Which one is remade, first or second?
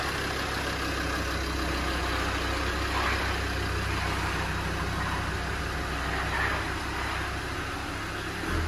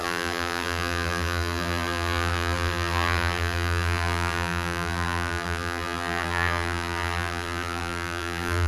second